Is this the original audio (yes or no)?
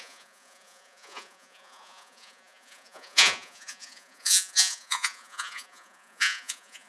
no